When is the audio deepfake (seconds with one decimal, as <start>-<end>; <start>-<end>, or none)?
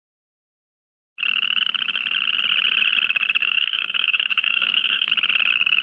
3.4-5.1